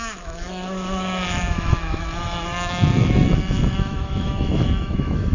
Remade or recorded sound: remade